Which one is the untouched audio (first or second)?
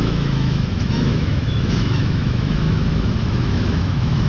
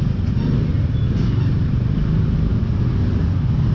second